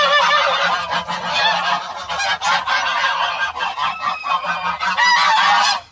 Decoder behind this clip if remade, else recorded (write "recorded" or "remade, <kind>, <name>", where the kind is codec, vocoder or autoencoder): recorded